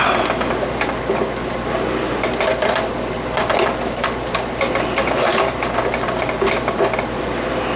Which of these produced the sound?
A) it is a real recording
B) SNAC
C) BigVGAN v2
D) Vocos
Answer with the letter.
C